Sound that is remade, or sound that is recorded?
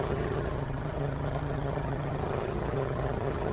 remade